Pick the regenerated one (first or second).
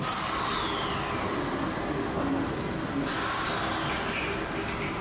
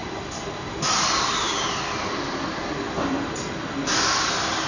second